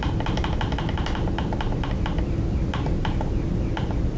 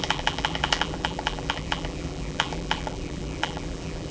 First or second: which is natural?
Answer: first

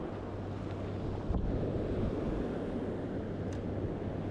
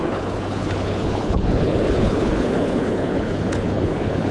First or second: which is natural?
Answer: first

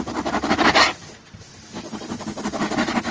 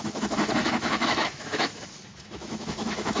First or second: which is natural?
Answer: first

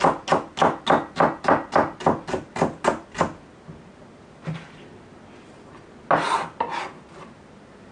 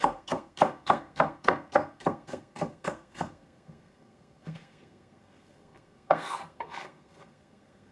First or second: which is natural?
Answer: first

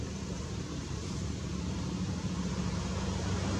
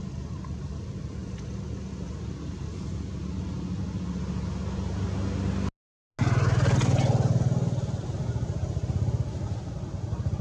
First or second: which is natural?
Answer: second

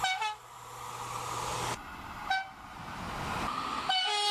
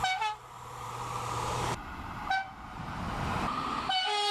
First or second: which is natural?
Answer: first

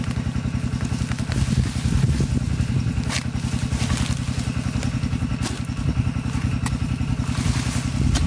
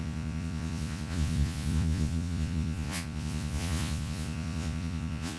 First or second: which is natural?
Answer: first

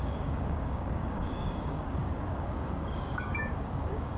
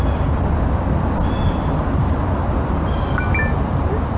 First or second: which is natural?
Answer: second